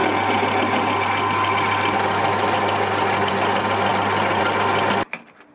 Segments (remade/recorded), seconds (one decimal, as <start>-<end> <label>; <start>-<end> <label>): 0.0-5.5 recorded